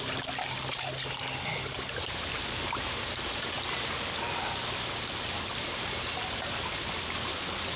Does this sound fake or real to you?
real